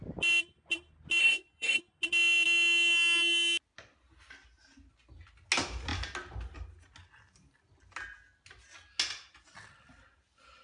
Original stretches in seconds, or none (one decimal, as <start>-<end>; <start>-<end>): 0.0-1.2; 1.8-10.6